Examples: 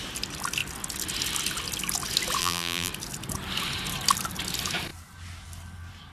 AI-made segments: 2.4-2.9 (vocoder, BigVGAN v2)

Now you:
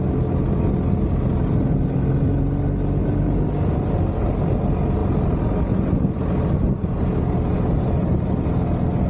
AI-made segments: none

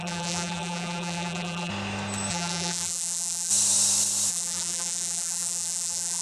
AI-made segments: 0.0-1.7 (vocoder, BigVGAN v2); 2.3-3.5; 4.3-6.2

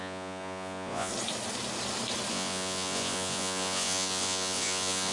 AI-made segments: 0.0-1.1 (vocoder, Vocos); 2.3-5.1

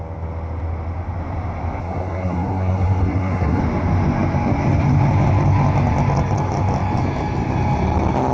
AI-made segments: 1.8-3.6 (codec, SNAC)

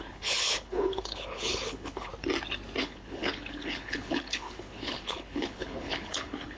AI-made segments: 0.0-2.1 (codec, HILCodec); 2.8-6.6